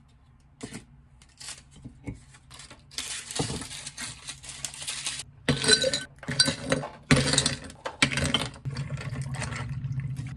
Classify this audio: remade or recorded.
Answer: recorded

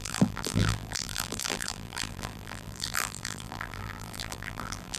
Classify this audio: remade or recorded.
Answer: remade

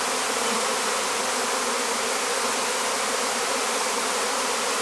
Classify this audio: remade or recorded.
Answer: remade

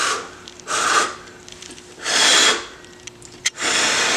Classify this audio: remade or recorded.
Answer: remade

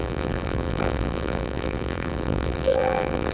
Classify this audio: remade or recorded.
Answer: remade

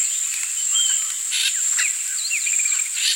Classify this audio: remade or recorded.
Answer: remade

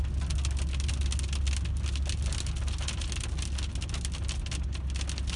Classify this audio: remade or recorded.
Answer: recorded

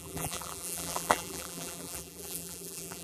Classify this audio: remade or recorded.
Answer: remade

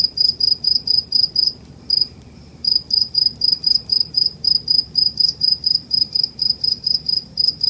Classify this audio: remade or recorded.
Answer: remade